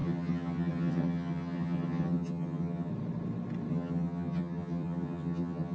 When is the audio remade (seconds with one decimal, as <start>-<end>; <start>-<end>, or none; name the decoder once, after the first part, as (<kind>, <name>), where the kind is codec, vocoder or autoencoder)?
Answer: 0.0-2.9 (vocoder, HiFi-GAN); 3.7-5.7